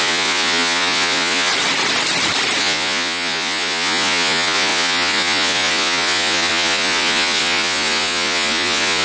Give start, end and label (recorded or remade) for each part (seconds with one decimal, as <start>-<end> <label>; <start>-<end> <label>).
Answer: 0.0-1.5 remade; 1.5-2.6 recorded; 2.6-9.0 remade